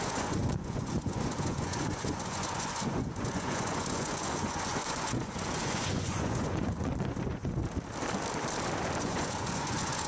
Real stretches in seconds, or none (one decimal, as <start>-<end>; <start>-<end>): 7.6-9.0

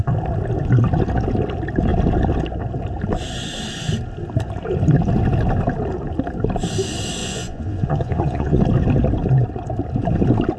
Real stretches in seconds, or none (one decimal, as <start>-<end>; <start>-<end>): 0.0-7.2; 8.6-10.6

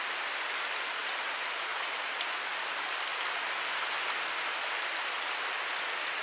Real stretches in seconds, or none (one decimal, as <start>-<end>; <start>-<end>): 0.0-1.0; 2.5-6.2